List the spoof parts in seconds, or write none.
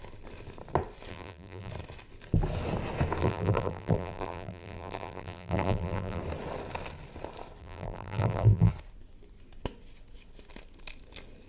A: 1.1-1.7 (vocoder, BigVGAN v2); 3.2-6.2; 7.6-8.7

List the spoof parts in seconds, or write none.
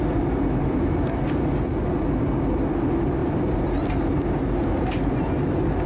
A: none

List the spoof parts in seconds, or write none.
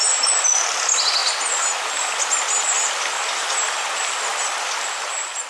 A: none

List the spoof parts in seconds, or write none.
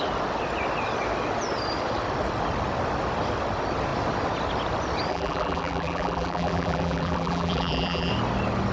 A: 5.1-8.1 (vocoder, BigVGAN v2)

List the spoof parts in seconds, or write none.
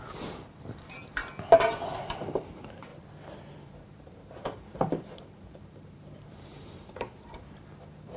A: 0.0-1.2 (vocoder, BigVGAN v2); 2.0-2.9; 3.6-8.2